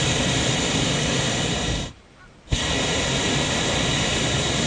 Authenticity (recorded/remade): recorded